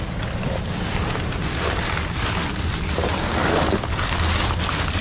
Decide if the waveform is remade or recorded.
recorded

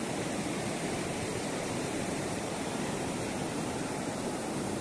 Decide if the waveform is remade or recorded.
remade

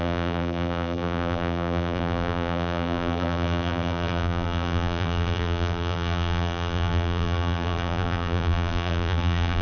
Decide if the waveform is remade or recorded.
remade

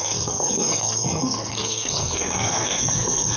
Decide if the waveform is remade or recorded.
remade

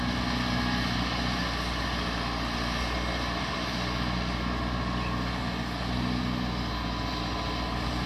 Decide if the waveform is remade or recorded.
recorded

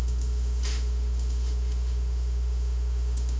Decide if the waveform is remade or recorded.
remade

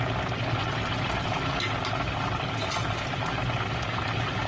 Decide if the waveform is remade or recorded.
recorded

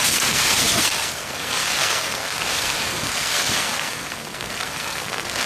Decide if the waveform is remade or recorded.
remade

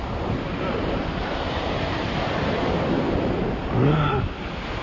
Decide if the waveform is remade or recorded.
recorded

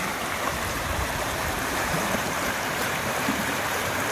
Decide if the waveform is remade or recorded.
remade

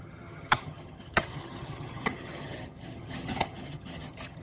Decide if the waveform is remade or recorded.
remade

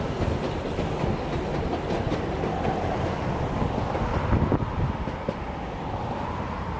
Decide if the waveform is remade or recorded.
recorded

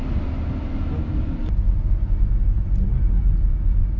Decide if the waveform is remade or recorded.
recorded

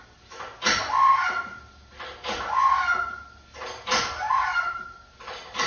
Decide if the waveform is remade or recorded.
recorded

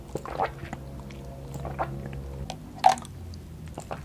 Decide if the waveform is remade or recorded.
recorded